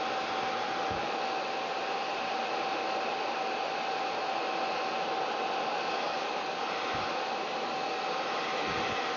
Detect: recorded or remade recorded